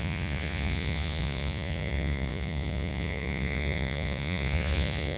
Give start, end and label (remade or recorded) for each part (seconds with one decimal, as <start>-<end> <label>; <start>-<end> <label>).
0.0-5.2 remade